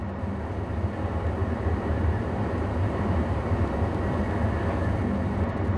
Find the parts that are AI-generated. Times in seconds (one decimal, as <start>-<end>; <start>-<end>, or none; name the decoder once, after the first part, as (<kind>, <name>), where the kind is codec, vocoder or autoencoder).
1.4-4.1 (vocoder, BigVGAN v2)